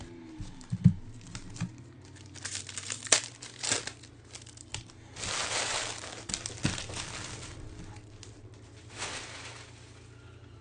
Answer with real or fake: real